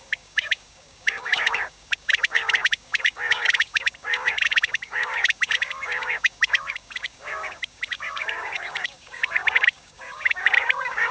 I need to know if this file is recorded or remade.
remade